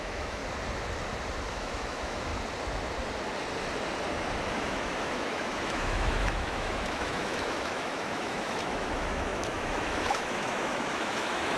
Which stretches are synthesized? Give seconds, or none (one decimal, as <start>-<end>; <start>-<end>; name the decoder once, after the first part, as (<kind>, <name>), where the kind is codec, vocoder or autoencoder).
0.0-0.4 (autoencoder, DAC-VAE); 1.5-2.3; 4.5-11.6